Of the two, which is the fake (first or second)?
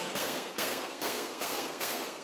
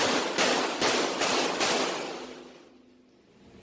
first